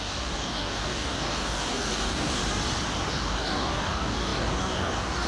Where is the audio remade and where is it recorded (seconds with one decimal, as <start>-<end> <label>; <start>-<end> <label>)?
0.0-2.4 remade; 2.4-3.1 recorded; 3.1-5.3 remade